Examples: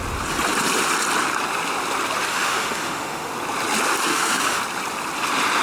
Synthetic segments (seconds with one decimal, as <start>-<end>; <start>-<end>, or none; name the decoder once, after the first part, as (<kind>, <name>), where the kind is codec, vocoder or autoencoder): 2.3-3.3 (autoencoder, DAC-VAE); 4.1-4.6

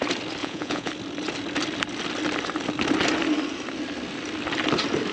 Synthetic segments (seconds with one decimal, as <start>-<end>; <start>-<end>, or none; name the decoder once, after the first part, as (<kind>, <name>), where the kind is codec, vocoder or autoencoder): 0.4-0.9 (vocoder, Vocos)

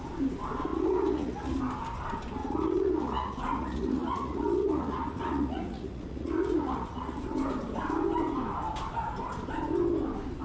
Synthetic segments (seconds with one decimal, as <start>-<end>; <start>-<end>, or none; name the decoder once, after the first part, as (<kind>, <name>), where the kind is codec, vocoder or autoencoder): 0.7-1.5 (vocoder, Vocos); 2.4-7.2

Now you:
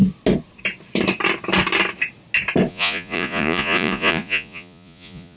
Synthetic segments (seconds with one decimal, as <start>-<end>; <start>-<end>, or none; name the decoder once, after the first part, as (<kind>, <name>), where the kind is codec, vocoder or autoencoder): 2.7-5.4 (vocoder, Vocos)

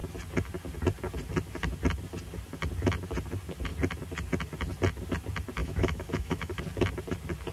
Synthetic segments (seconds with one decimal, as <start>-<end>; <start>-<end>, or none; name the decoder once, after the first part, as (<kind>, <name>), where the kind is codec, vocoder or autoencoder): 5.6-6.6 (autoencoder, DAC-VAE)

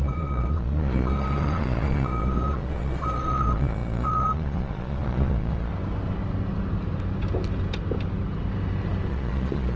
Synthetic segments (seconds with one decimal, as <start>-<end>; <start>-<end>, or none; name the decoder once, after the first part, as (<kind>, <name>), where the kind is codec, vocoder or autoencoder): 0.0-5.7 (vocoder, Vocos); 9.1-9.8

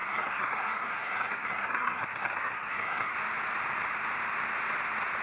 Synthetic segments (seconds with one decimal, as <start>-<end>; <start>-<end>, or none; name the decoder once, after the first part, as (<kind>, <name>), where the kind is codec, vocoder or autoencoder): 0.0-3.1 (codec, SNAC)